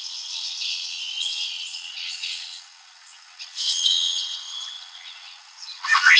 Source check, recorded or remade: remade